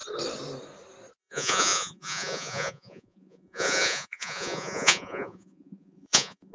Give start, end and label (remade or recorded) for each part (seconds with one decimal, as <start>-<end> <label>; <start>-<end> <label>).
0.0-1.2 recorded; 1.2-6.5 remade